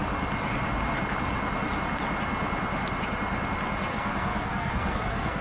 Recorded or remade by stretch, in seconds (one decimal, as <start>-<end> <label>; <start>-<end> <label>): 0.0-3.9 recorded; 3.9-5.4 remade